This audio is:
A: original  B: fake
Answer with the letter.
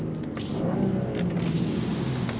A